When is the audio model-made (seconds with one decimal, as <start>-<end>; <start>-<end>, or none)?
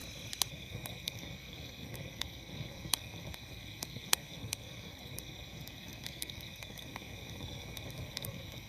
0.5-8.7